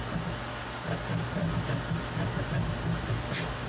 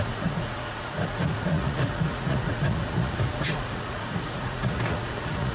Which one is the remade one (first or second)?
second